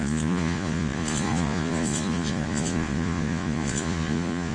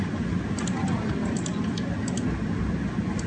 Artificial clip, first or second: first